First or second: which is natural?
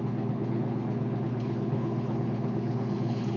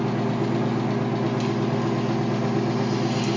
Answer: second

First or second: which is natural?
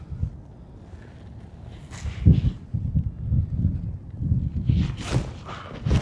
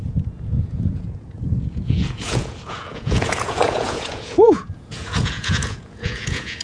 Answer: first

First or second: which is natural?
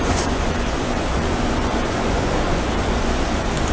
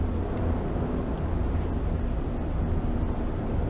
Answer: second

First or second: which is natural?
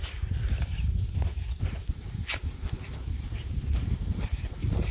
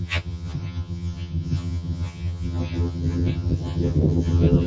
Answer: first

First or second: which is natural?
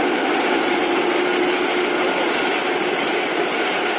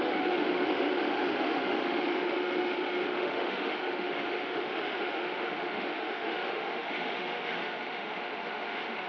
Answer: first